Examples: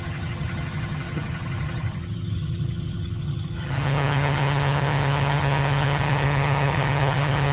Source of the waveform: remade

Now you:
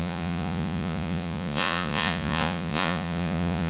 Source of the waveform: remade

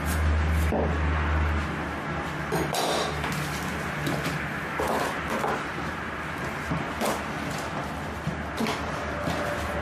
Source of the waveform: recorded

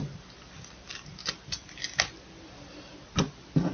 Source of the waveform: recorded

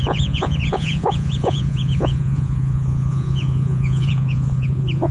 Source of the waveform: remade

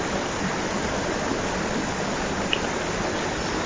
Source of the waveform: recorded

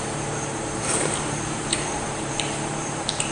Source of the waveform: remade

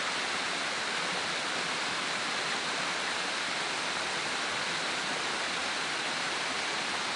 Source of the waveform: recorded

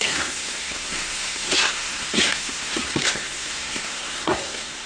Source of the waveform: remade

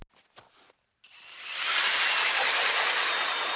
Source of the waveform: recorded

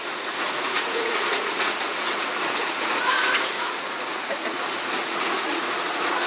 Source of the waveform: remade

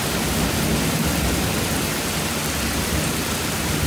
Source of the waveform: recorded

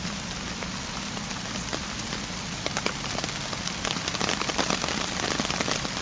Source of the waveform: recorded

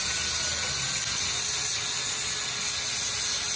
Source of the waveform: recorded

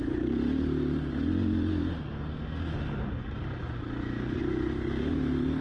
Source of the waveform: recorded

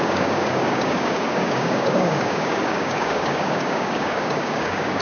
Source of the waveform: remade